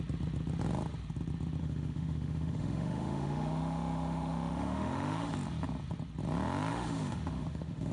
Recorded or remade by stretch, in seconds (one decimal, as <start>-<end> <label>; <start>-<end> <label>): 0.0-1.6 recorded; 1.6-5.3 remade; 5.3-6.7 recorded; 6.7-7.9 remade